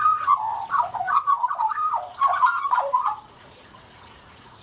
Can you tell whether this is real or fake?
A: fake